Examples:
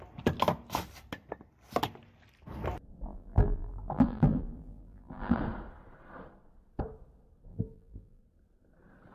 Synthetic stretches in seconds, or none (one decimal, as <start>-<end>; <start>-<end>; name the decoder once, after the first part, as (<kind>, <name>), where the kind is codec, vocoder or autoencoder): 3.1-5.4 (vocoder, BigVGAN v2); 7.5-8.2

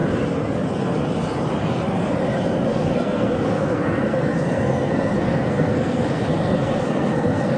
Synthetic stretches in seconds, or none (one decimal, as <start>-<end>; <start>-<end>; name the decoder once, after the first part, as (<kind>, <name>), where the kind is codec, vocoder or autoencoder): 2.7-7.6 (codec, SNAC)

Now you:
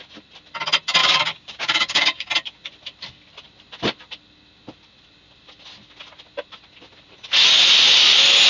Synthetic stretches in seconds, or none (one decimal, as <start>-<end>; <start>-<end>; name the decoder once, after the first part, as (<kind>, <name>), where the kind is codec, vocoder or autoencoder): 1.0-2.3 (codec, DAC)

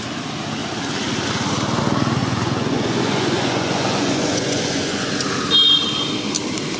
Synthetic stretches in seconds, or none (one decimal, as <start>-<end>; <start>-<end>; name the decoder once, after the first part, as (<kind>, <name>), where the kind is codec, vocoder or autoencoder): 2.2-5.1 (vocoder, Vocos)

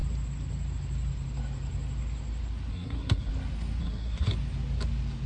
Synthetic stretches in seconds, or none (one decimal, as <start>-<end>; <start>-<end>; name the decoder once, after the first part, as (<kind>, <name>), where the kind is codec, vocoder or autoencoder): 2.7-3.3 (codec, SNAC); 3.8-4.3